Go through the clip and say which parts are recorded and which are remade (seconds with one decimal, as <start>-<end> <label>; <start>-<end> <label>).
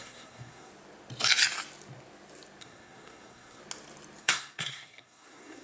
0.0-0.7 remade; 0.7-2.6 recorded; 2.6-3.6 remade; 3.6-4.2 recorded; 4.2-5.6 remade